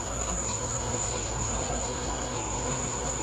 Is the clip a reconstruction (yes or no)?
yes